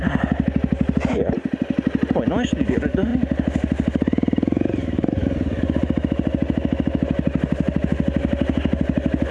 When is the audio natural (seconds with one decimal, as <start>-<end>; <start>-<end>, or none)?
0.0-9.3